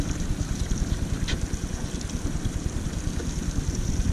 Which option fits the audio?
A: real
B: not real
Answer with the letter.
A